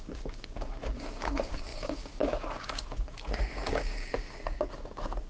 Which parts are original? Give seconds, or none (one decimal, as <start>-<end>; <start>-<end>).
none